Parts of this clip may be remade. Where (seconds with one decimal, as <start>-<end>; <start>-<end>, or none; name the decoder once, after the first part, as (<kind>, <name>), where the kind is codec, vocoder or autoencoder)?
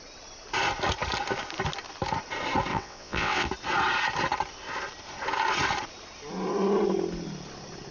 2.7-3.5 (vocoder, WaveNeXt)